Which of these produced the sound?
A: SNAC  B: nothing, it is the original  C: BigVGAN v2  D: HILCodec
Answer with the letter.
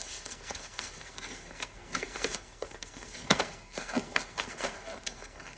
A